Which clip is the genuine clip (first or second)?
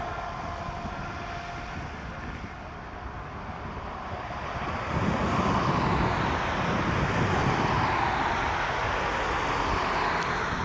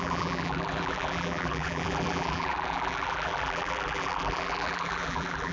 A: first